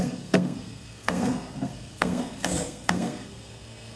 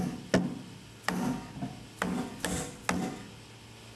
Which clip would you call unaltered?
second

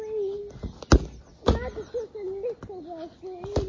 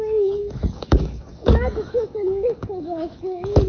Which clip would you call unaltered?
first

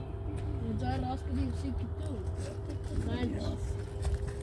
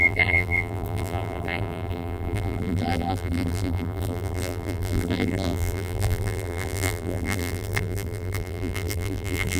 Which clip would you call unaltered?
first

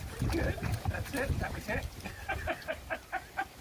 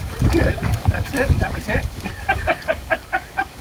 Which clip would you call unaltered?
first